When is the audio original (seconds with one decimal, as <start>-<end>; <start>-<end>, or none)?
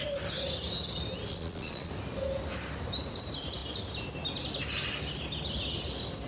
0.0-1.3; 1.9-6.3